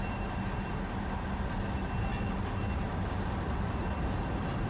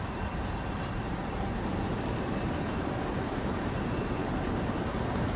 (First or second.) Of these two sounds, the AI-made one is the second